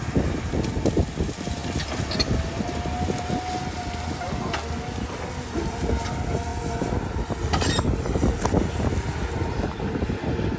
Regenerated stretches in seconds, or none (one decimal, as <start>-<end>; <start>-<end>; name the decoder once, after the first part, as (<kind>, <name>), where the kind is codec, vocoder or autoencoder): none